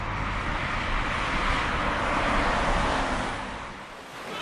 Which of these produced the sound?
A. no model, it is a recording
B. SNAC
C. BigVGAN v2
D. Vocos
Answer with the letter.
A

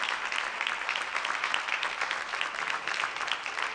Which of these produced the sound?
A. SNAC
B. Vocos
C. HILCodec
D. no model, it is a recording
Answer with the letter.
D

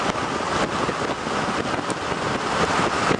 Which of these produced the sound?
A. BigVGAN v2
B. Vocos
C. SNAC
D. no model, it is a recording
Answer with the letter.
D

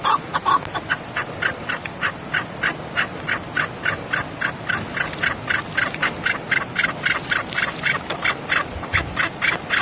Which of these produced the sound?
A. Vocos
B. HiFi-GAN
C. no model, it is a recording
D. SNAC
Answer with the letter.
C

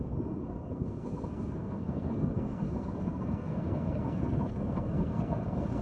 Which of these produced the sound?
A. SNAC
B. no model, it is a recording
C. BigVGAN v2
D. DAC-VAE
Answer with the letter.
A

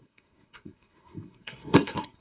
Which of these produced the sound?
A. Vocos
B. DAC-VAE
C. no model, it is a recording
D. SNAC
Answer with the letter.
D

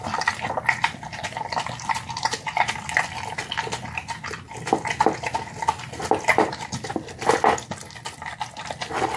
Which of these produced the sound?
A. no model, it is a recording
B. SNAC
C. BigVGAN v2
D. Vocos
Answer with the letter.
A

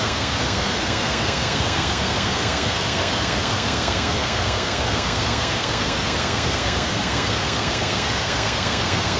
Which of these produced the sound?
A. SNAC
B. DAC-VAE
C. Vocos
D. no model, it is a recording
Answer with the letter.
A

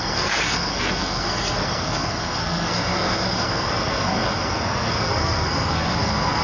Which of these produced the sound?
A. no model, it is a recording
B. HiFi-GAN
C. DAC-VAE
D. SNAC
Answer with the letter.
D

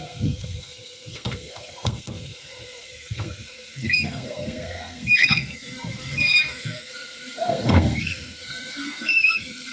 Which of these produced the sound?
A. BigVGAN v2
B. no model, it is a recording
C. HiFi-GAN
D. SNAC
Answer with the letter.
D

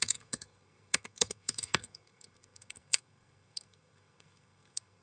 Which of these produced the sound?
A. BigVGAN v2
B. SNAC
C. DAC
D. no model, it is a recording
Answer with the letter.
B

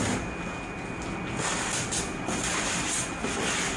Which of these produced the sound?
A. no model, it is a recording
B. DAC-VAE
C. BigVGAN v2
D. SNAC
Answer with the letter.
A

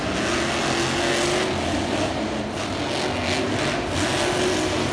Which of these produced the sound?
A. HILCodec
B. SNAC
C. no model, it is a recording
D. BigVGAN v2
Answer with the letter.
C